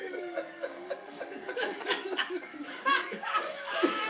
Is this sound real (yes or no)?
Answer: no